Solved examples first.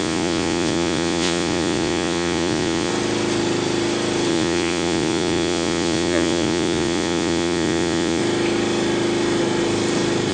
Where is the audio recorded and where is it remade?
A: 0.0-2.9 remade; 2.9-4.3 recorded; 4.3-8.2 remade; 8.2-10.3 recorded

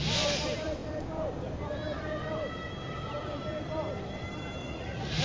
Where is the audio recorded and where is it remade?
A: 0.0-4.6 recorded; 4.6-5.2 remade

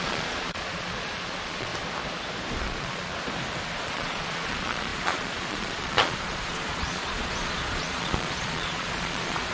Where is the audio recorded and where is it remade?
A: 0.0-1.7 remade; 1.7-2.6 recorded; 2.6-3.1 remade; 3.1-3.8 recorded; 3.8-9.5 remade